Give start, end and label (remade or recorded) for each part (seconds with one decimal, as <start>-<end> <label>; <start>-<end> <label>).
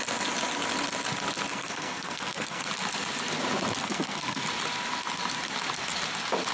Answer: 0.0-1.5 recorded; 1.5-2.7 remade; 2.7-3.8 recorded; 3.8-4.4 remade; 4.4-6.5 recorded